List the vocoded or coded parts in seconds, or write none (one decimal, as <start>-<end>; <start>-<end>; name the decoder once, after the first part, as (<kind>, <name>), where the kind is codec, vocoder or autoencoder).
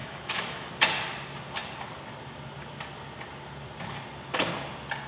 0.0-0.7 (autoencoder, DAC-VAE)